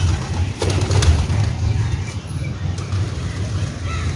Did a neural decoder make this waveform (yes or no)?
no